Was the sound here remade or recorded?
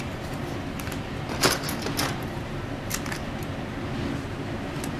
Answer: recorded